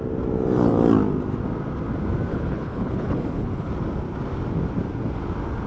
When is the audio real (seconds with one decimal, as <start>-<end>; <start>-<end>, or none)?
0.0-2.3; 3.7-5.7